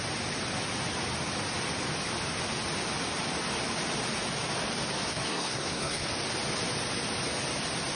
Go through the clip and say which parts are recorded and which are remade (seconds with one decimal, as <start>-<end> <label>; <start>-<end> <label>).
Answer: 0.0-5.1 recorded; 5.1-6.1 remade; 6.1-8.0 recorded